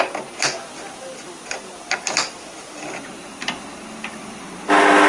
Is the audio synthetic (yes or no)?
no